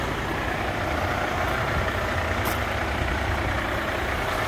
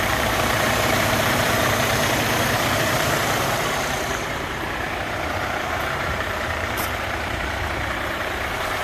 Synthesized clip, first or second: second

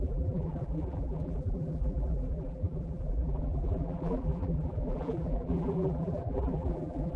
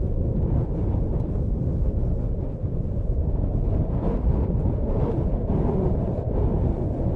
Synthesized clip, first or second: first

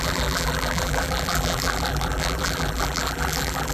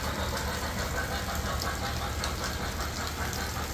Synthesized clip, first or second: first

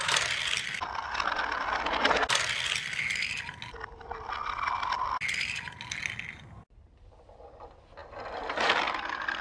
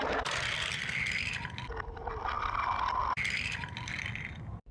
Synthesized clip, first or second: second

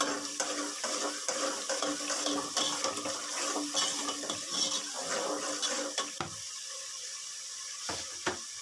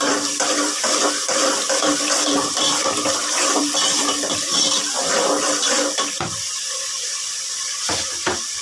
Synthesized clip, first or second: second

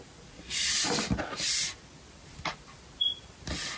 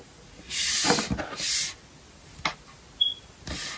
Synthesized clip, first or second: first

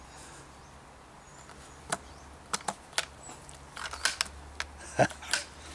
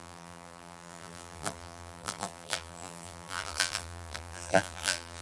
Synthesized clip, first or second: second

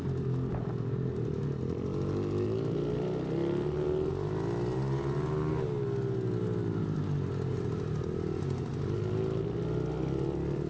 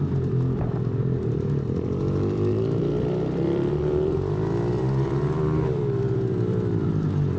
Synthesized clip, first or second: second